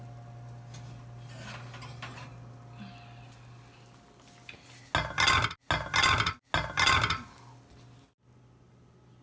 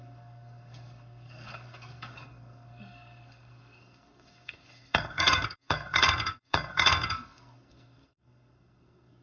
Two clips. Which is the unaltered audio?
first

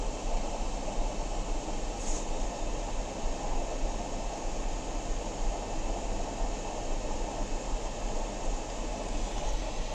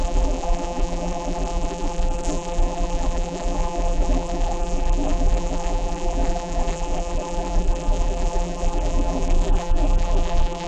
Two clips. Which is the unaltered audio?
first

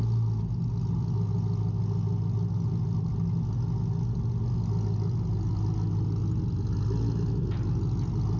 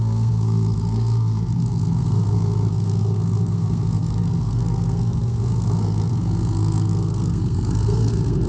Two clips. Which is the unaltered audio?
first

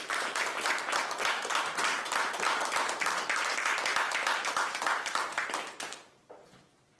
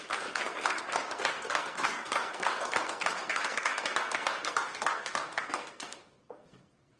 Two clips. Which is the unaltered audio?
first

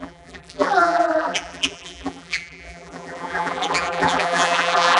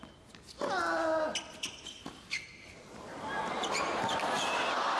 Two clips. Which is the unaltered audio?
second